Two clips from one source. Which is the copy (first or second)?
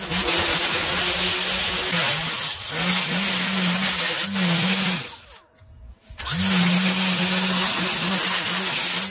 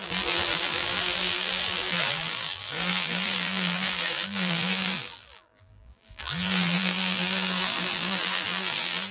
second